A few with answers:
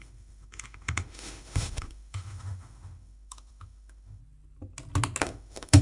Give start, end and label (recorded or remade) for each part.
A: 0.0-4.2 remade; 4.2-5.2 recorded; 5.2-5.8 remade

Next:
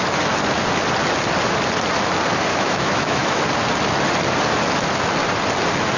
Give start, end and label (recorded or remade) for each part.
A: 0.0-2.5 recorded; 2.5-3.4 remade; 3.4-6.0 recorded

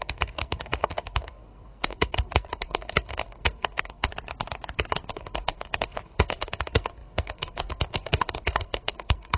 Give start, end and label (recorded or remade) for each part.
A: 0.0-4.1 remade; 4.1-5.1 recorded; 5.1-9.4 remade